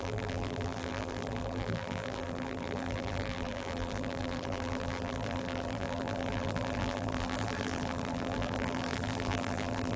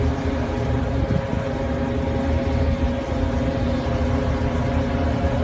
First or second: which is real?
second